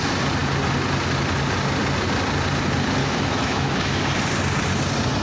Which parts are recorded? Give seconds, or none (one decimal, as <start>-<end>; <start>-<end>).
0.0-3.0; 4.0-5.2